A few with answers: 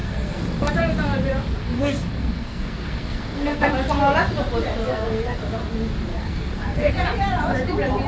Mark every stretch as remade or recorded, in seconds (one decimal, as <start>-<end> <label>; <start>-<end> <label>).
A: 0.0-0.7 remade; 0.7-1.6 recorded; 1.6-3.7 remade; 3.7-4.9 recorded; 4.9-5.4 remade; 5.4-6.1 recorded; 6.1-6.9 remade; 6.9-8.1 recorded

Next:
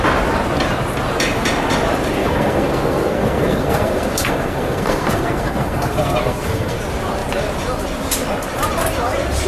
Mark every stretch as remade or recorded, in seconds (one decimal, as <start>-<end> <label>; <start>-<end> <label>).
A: 0.0-2.2 recorded; 2.2-6.8 remade; 6.8-9.5 recorded

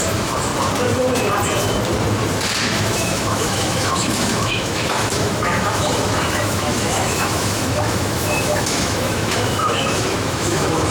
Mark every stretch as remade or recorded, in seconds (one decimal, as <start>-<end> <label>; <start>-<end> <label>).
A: 0.0-0.5 remade; 0.5-2.6 recorded; 2.6-10.9 remade

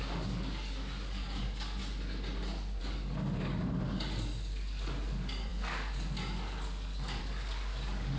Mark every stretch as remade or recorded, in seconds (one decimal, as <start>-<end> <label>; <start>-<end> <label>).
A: 0.0-1.8 remade; 1.8-2.8 recorded; 2.8-8.2 remade

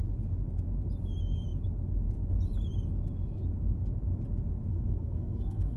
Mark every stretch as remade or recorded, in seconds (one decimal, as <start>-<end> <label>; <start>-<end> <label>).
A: 0.0-4.7 recorded; 4.7-5.8 remade

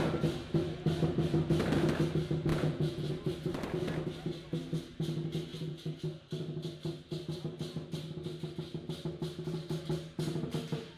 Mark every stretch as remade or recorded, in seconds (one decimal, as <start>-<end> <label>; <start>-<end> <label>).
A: 0.0-2.5 recorded; 2.5-3.1 remade; 3.1-5.5 recorded; 5.5-6.0 remade; 6.0-11.0 recorded

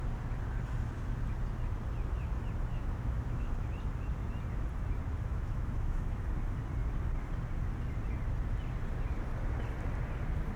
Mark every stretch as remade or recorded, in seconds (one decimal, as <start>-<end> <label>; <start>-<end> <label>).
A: 0.0-2.7 recorded; 2.7-3.6 remade; 3.6-5.3 recorded; 5.3-6.2 remade; 6.2-10.6 recorded